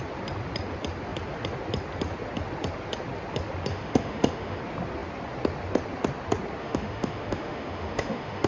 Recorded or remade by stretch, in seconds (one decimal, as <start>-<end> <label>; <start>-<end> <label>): 0.0-3.7 recorded; 3.7-4.6 remade; 4.6-6.6 recorded; 6.6-8.5 remade